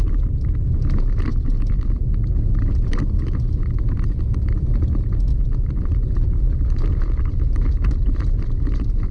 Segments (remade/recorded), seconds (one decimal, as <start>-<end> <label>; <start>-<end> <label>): 0.0-5.3 recorded; 5.3-8.2 remade; 8.2-9.1 recorded